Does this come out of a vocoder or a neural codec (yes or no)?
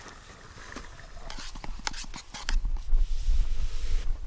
no